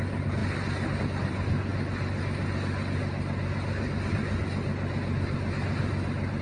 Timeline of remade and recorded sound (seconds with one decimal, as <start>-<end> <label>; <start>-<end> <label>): 0.0-6.4 recorded